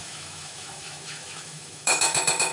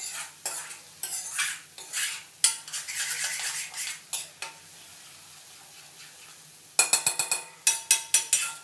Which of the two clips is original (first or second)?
second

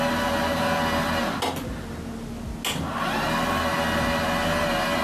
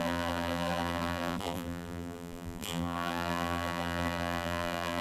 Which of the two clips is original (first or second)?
first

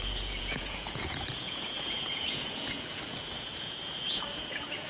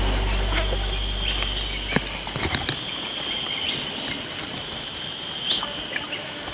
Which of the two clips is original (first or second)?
second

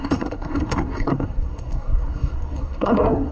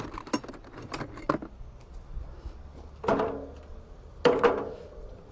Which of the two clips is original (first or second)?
second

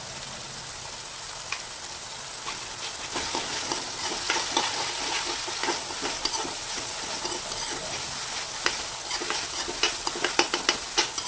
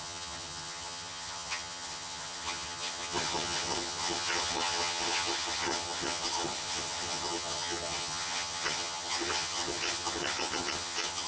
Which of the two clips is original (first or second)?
first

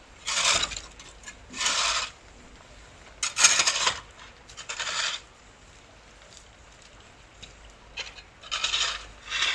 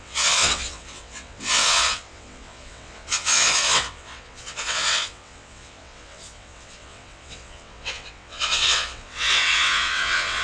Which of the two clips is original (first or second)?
first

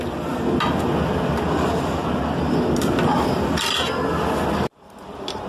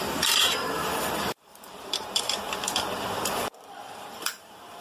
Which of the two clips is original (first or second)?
first